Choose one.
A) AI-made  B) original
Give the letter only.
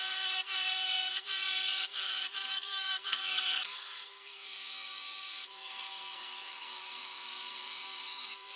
A